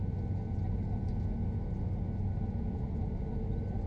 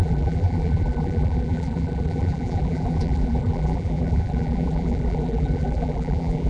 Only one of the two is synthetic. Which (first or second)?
second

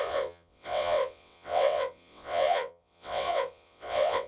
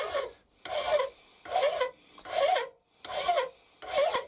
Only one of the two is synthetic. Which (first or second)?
first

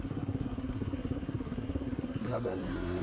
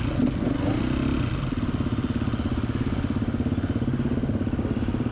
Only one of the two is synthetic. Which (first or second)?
first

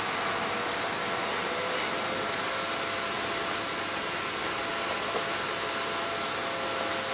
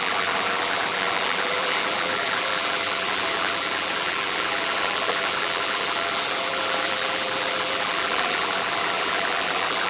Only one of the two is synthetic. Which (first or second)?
second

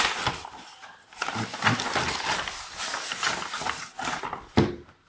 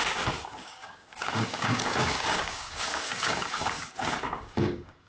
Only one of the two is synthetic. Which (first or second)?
second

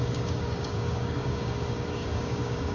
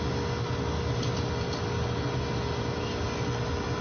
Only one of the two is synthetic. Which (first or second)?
first